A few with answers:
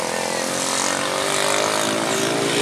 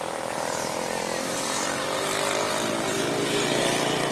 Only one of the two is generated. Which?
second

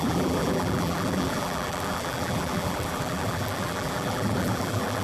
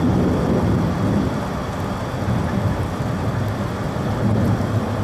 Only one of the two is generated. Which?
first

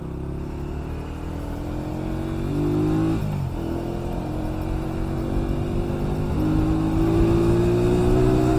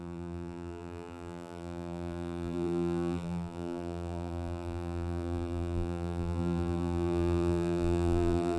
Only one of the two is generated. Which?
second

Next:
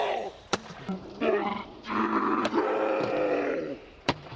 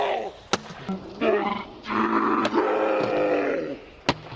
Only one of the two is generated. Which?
first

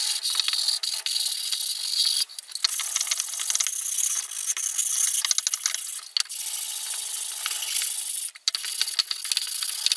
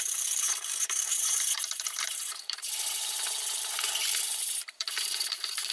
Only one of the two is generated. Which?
second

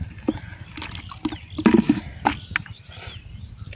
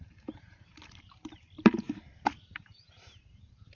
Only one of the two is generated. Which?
second